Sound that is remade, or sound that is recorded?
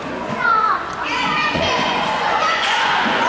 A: remade